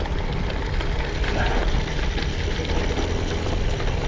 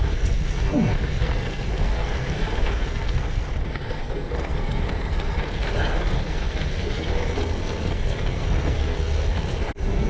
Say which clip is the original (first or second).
first